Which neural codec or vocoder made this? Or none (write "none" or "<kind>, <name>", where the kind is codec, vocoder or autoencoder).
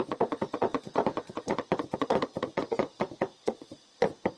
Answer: vocoder, Vocos